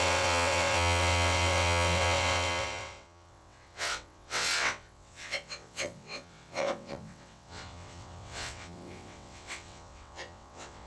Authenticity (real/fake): fake